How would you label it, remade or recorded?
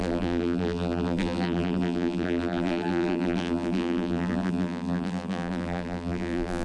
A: remade